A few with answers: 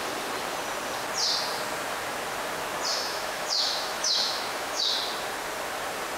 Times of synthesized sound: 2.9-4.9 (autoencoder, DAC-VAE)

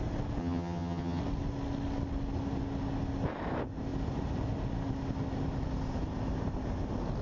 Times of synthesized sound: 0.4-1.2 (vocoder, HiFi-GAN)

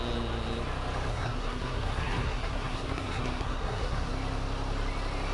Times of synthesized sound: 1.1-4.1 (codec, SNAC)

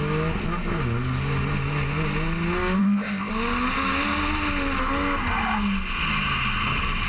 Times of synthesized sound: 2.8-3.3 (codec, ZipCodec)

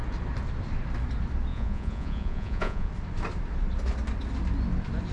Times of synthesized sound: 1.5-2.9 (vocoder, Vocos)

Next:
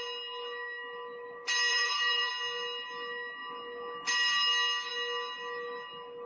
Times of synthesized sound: 1.7-2.3 (vocoder, BigVGAN v2)

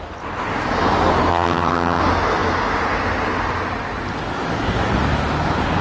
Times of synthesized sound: 1.3-2.0 (vocoder, HiFi-GAN)

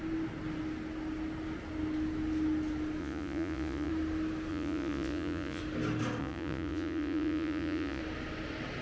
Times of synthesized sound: 3.0-3.9 (vocoder, Vocos); 4.5-5.6; 6.2-8.0